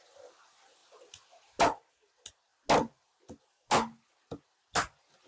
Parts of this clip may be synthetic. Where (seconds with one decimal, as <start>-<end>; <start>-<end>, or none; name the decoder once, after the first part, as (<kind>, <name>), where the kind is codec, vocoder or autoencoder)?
none

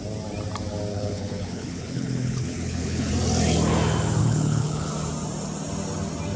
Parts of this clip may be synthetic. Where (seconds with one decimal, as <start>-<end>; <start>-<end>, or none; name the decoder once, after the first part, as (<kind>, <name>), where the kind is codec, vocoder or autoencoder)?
0.9-3.1 (codec, HILCodec); 4.2-4.9

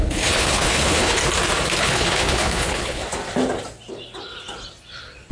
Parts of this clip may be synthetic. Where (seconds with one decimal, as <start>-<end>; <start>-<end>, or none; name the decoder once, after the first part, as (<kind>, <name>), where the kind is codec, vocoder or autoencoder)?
0.0-1.2 (codec, HILCodec); 1.8-3.0